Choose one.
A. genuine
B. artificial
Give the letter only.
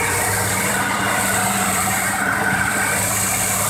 B